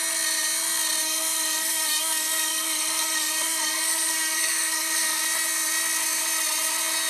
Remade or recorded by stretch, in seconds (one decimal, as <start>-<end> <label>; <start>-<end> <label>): 0.0-1.0 recorded; 1.0-5.2 remade; 5.2-7.1 recorded